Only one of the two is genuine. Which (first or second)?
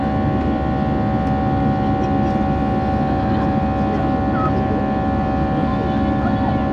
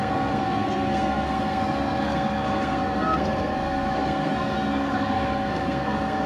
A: first